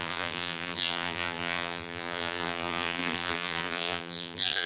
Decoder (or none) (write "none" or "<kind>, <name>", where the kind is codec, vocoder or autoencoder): vocoder, BigVGAN v2